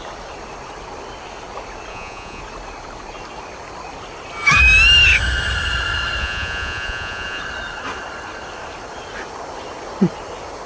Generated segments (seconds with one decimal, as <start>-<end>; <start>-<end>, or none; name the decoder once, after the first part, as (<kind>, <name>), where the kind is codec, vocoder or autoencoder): 1.9-2.4 (vocoder, Vocos); 6.2-7.4